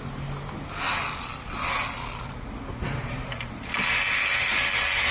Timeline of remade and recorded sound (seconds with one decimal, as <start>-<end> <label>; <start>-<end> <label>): 0.0-5.1 recorded

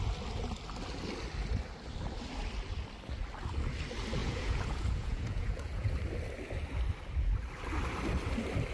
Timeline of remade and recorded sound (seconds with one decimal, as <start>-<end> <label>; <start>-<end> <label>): 0.0-4.2 recorded; 4.2-5.9 remade; 5.9-8.7 recorded

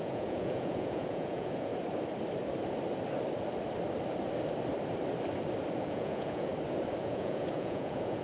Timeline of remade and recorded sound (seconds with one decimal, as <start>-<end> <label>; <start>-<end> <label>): 0.0-1.7 remade; 1.7-5.8 recorded; 5.8-6.5 remade; 6.5-7.0 recorded; 7.0-8.2 remade

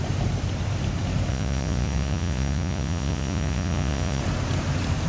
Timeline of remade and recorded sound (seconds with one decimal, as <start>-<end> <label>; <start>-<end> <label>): 0.0-1.3 recorded; 1.3-4.2 remade; 4.2-5.1 recorded

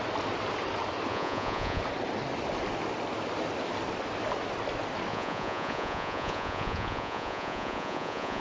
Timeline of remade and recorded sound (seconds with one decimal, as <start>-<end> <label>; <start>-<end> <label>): 0.0-1.1 recorded; 1.1-1.8 remade; 1.8-5.1 recorded; 5.1-8.4 remade

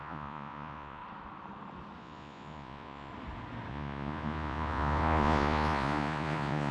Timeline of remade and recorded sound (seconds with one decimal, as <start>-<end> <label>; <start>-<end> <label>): 0.0-1.0 remade; 1.0-2.0 recorded; 2.0-3.1 remade; 3.1-3.7 recorded; 3.7-6.7 remade

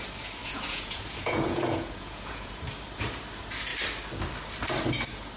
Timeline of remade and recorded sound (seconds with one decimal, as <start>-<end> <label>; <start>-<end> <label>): 0.0-0.4 recorded; 0.4-2.6 remade; 2.6-5.4 recorded